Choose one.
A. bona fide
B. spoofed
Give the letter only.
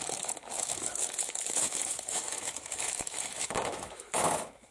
B